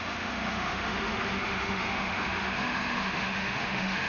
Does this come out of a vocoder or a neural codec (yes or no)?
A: yes